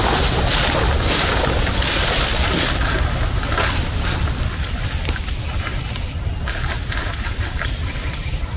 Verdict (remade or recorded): recorded